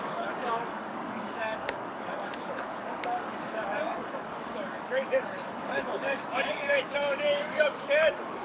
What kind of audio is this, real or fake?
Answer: fake